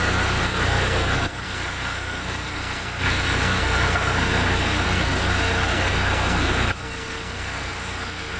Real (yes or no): no